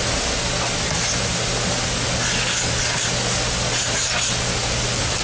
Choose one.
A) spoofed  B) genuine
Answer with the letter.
B